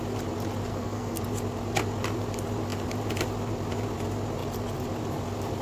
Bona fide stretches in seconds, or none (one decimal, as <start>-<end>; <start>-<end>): 0.0-0.7; 1.2-5.6